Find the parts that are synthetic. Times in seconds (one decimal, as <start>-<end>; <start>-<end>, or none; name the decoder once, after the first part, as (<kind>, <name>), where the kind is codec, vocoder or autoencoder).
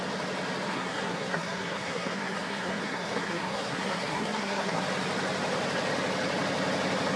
0.7-4.8 (codec, SNAC)